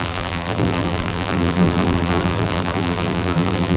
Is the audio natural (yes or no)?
no